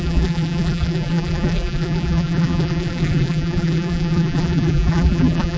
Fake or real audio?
fake